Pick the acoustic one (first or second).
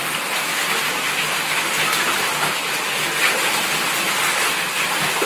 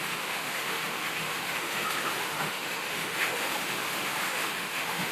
first